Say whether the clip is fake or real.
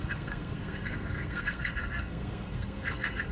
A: fake